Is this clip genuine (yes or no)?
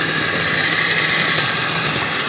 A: yes